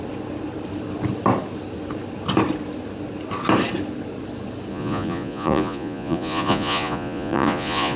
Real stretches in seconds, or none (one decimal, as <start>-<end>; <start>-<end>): 0.0-4.7